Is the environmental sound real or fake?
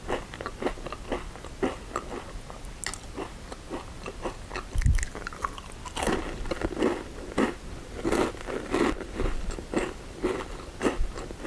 real